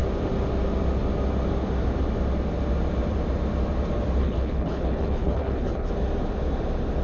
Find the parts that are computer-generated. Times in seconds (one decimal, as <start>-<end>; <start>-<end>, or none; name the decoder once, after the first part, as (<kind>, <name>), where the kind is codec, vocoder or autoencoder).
4.2-5.9 (codec, HILCodec)